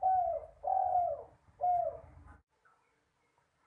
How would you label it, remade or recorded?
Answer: recorded